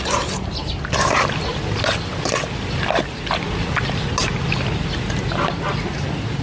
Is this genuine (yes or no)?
yes